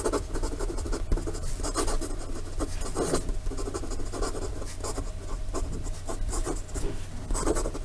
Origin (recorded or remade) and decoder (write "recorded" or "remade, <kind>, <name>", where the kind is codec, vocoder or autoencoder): recorded